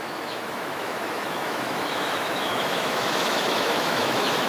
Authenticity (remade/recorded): remade